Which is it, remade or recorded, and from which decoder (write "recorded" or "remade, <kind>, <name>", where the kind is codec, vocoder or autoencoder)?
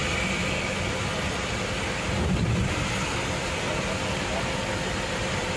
remade, vocoder, BigVGAN v2